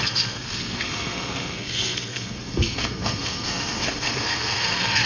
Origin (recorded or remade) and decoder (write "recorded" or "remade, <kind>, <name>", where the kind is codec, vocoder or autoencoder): remade, codec, SNAC